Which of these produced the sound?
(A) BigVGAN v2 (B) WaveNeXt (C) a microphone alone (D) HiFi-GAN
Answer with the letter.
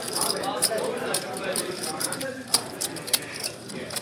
A